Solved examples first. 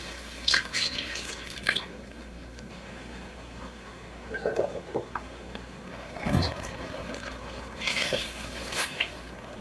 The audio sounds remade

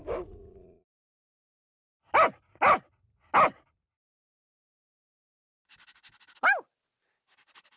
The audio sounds recorded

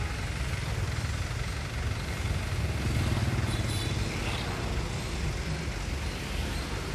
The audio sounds recorded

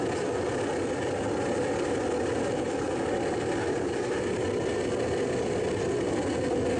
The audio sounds recorded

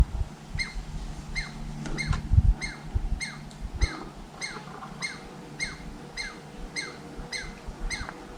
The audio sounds recorded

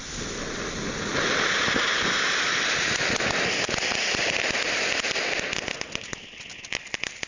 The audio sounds recorded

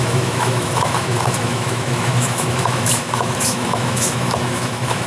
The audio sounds remade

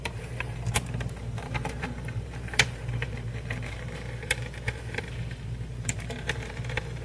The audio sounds remade